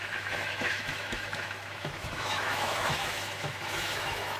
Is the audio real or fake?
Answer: fake